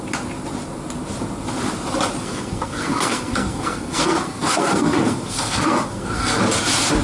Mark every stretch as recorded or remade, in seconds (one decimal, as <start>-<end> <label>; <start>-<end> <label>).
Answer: 0.0-2.2 recorded; 2.2-6.4 remade; 6.4-7.0 recorded

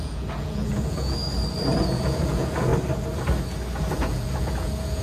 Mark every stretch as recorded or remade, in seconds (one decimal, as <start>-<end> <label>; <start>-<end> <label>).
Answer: 0.0-1.2 remade; 1.2-1.8 recorded; 1.8-2.7 remade; 2.7-3.9 recorded; 3.9-5.0 remade